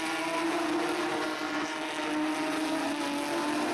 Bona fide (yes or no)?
yes